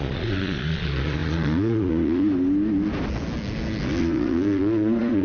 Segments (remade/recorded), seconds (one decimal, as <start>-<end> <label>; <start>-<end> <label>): 0.0-2.3 remade; 2.3-4.0 recorded; 4.0-5.2 remade